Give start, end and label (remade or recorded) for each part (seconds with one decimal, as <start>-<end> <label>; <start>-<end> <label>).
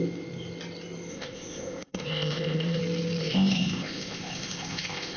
0.0-1.1 recorded; 1.1-2.8 remade; 2.8-3.2 recorded; 3.2-5.2 remade